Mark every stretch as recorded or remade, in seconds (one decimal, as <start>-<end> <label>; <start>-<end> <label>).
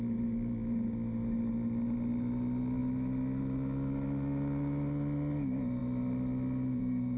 0.0-7.2 recorded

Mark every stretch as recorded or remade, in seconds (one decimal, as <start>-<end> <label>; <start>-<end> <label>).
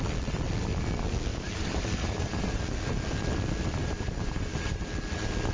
0.0-1.3 recorded; 1.3-2.6 remade; 2.6-3.8 recorded; 3.8-4.8 remade; 4.8-5.5 recorded